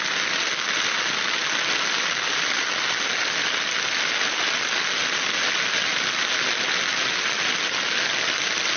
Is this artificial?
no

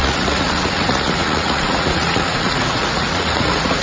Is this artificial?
yes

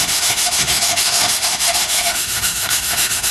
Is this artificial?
yes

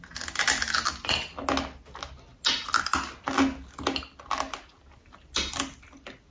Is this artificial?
no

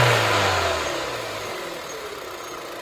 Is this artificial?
no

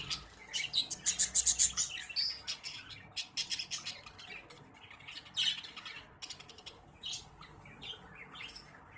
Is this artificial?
no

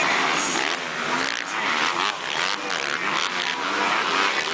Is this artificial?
no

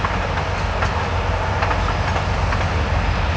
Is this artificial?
no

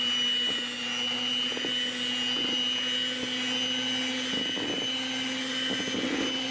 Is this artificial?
no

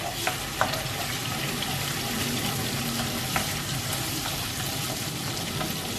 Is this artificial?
no